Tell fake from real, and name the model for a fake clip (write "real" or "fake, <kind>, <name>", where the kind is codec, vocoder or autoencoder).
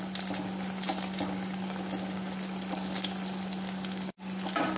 real